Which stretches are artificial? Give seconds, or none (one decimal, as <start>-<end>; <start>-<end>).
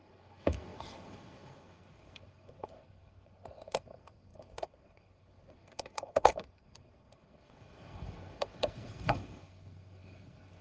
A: 0.0-10.6